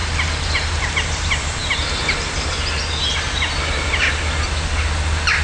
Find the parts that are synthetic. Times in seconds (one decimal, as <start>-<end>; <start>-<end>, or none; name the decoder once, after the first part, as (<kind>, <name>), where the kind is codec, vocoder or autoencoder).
0.0-0.8 (vocoder, BigVGAN v2)